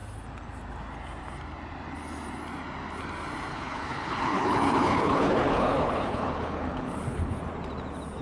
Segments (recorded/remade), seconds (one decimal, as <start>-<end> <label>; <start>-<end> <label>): 0.0-3.5 recorded; 3.5-7.4 remade; 7.4-8.2 recorded

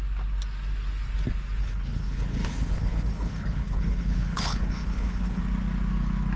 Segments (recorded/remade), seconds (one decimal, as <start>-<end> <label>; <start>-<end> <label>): 0.0-1.6 recorded; 1.6-5.4 remade; 5.4-6.4 recorded

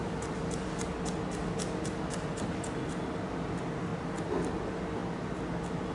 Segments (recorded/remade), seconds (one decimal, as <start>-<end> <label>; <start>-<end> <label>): 0.0-5.9 recorded

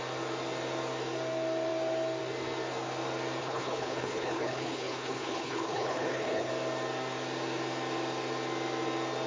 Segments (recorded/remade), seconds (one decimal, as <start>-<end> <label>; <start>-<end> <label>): 0.0-3.4 recorded; 3.4-6.5 remade; 6.5-9.3 recorded